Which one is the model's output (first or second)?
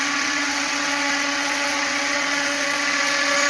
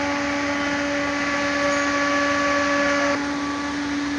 first